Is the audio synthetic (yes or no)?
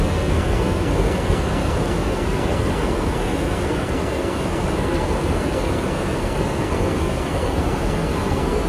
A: yes